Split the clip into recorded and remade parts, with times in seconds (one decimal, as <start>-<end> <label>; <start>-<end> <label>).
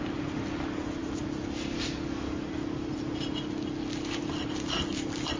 0.0-5.4 recorded